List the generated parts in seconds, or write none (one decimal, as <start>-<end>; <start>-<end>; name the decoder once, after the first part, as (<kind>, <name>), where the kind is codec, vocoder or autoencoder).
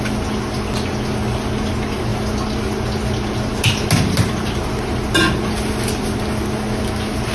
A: none